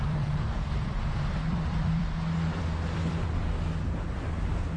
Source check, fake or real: fake